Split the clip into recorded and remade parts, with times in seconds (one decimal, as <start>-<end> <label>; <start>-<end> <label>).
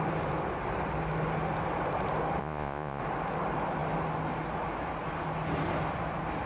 0.0-2.4 recorded; 2.4-3.0 remade; 3.0-6.5 recorded